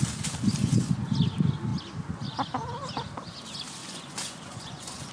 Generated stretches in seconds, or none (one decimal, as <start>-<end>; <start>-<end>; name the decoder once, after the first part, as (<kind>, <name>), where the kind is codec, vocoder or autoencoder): 0.6-1.1 (vocoder, Vocos); 3.8-5.1